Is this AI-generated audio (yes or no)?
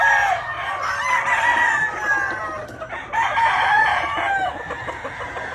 no